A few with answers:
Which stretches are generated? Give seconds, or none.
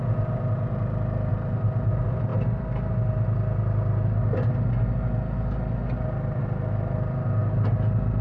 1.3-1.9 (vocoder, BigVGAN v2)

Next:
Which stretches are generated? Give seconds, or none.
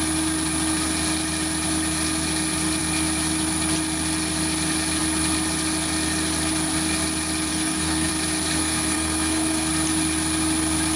7.5-8.1 (codec, SNAC); 8.6-9.7